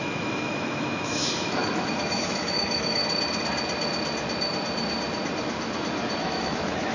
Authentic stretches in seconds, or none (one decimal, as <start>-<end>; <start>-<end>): 3.0-6.2